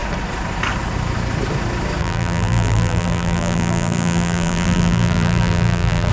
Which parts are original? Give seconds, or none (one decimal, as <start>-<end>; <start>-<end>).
0.0-2.0